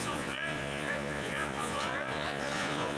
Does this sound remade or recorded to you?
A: remade